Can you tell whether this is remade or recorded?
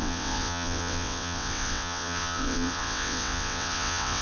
remade